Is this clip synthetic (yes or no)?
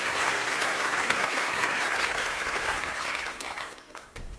yes